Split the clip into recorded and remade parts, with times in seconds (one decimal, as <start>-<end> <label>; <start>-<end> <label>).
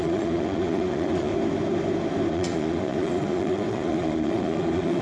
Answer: 0.0-1.3 remade; 1.3-2.3 recorded; 2.3-5.0 remade